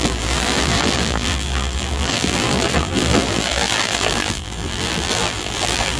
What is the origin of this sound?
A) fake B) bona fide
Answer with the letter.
A